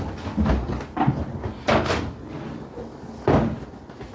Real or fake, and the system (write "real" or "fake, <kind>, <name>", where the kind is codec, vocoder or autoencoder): real